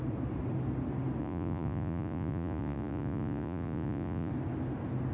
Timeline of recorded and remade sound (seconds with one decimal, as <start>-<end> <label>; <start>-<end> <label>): 0.0-1.2 recorded; 1.2-4.3 remade; 4.3-5.1 recorded